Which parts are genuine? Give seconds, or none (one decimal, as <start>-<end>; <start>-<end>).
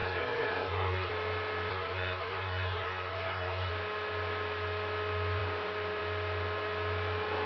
1.1-1.7; 3.7-7.5